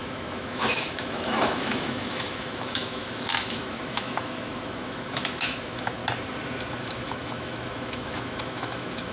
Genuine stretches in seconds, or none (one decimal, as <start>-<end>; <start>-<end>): 6.0-6.8